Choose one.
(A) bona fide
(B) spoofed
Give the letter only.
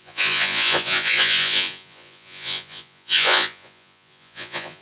B